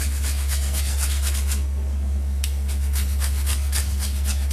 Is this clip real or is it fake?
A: fake